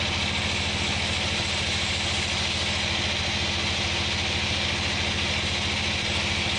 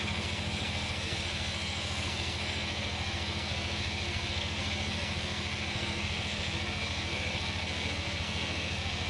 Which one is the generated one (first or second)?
second